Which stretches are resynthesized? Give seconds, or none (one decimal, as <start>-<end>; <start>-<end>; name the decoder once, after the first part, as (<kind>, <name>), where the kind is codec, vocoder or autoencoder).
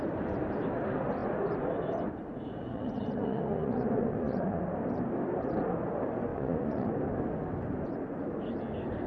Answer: 2.7-4.6 (vocoder, Vocos); 6.3-6.9